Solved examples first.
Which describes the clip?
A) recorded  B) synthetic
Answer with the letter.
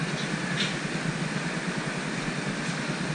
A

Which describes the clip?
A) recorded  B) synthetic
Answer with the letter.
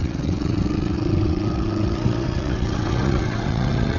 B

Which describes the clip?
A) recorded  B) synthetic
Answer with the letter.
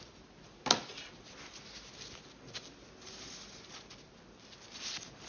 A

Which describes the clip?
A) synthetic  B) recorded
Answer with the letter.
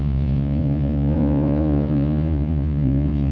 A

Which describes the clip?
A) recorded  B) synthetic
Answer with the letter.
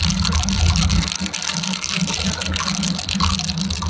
A